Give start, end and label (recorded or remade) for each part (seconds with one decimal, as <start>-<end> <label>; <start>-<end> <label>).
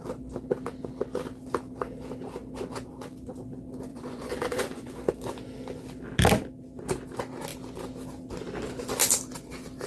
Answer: 0.0-3.9 recorded; 3.9-4.9 remade; 4.9-9.9 recorded